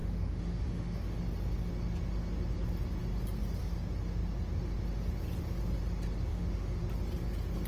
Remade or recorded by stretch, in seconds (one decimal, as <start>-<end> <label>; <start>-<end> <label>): 0.0-1.2 remade; 1.2-6.3 recorded; 6.3-6.8 remade; 6.8-7.7 recorded